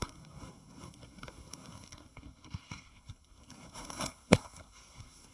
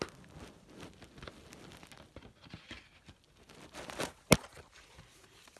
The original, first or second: second